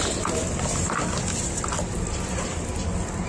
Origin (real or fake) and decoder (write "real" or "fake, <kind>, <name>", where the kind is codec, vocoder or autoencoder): real